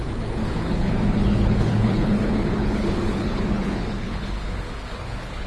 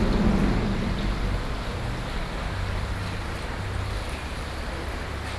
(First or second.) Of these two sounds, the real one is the second